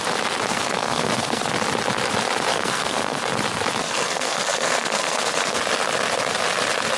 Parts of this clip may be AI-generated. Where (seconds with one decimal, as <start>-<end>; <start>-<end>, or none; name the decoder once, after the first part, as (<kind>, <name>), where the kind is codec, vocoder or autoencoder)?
0.5-1.5 (codec, SNAC); 2.5-3.2; 3.8-5.6